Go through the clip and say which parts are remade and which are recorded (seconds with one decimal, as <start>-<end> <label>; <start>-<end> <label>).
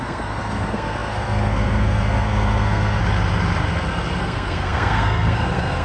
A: 0.0-3.0 remade; 3.0-4.2 recorded; 4.2-5.8 remade